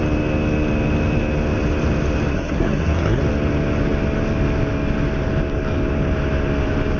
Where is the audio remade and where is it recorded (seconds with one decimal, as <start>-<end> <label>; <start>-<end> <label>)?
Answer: 0.0-2.3 recorded; 2.3-3.2 remade; 3.2-7.0 recorded